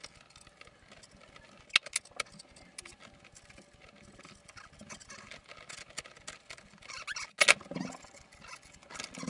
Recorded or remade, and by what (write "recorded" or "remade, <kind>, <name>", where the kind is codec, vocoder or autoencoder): recorded